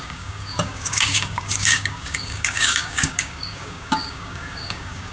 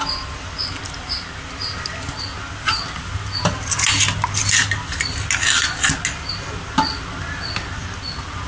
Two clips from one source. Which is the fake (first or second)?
first